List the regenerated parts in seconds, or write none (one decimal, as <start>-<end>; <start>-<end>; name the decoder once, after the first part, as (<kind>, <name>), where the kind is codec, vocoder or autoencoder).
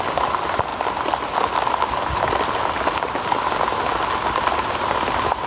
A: none